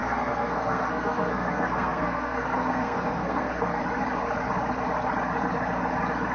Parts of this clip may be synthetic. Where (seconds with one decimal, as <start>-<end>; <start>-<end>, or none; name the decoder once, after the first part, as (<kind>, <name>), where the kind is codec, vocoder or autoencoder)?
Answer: 0.0-3.8 (codec, SNAC)